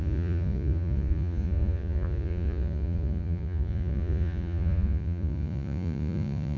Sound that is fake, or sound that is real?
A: fake